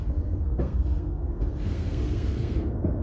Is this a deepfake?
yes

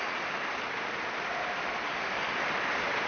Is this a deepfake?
no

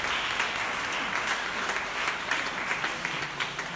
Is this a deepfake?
no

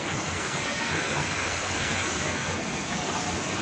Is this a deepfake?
yes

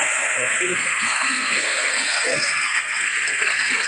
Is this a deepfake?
yes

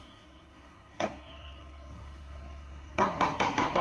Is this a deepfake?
yes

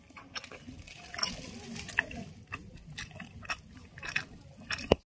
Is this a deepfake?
no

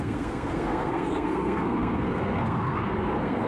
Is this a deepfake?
yes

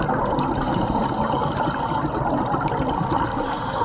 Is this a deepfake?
no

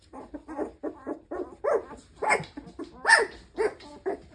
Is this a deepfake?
no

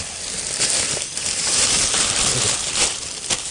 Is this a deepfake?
no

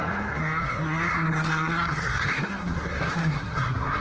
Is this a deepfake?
yes